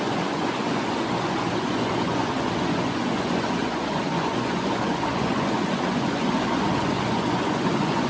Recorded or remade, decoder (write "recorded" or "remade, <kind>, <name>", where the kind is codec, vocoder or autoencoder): remade, vocoder, Vocos